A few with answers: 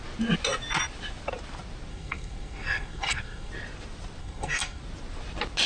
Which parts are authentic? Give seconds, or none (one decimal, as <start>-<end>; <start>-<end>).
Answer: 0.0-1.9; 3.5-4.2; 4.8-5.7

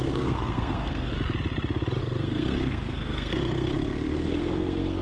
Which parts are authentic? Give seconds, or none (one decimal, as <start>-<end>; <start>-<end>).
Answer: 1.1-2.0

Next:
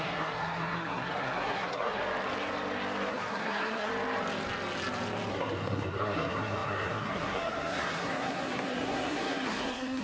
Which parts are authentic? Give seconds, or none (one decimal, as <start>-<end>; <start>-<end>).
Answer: 2.0-3.1; 3.9-5.3

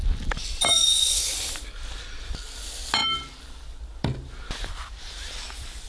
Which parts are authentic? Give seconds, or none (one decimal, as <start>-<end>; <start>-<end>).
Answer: 0.0-5.9

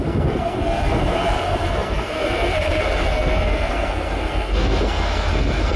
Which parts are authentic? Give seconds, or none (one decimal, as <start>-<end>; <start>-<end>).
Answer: none

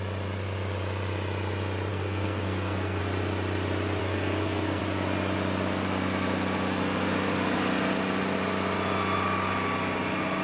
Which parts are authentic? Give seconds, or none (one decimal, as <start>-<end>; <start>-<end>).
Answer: 0.0-1.9; 3.0-4.0; 4.8-10.4

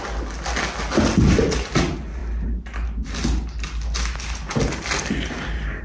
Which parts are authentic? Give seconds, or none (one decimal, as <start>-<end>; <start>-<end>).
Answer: 0.0-5.8